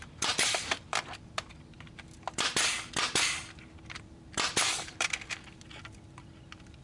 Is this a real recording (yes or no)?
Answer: no